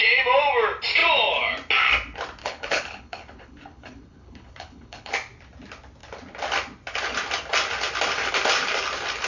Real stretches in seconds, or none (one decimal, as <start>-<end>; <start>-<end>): 0.0-2.4; 5.1-9.3

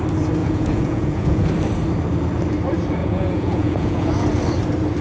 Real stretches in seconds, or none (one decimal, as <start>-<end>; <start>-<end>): 0.0-0.4; 1.5-3.0; 4.1-5.0

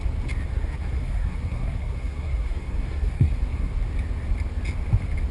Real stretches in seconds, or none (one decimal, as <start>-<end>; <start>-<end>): 0.0-0.5; 3.7-5.3

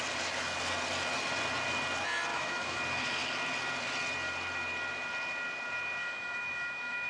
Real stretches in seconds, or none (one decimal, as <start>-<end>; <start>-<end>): 0.0-2.3; 2.8-6.0

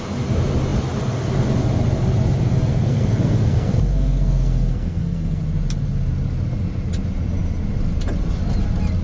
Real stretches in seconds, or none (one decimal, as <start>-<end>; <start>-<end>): 0.0-2.7; 5.4-9.0